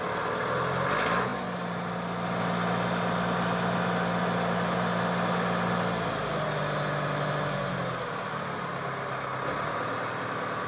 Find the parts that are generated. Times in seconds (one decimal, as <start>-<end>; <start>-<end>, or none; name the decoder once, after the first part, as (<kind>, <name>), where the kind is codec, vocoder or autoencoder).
none